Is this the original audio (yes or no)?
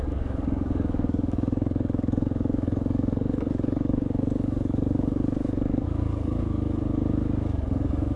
no